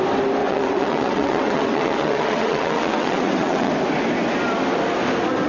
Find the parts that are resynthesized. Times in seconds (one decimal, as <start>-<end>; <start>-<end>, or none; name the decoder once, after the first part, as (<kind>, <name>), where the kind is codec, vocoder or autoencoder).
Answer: 0.4-3.7 (vocoder, WaveNeXt)